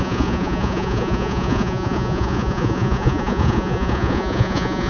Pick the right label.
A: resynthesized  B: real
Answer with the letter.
A